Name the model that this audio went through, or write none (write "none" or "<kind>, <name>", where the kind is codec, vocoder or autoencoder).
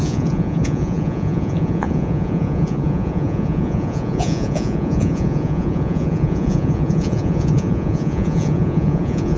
vocoder, Vocos